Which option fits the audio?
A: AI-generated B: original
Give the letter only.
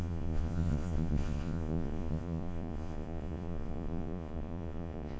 A